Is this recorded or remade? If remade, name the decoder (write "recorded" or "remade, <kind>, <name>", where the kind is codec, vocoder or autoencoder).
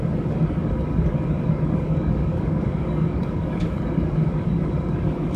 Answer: remade, codec, DAC